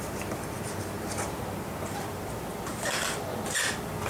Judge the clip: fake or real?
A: fake